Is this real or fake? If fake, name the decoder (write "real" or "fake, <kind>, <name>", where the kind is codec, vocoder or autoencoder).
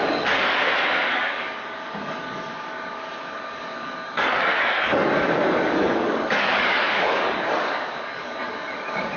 fake, codec, DAC